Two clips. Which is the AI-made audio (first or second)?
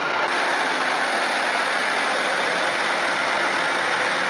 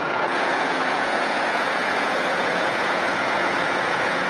second